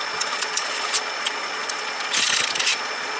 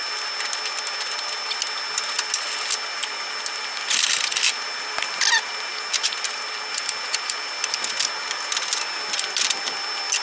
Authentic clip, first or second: second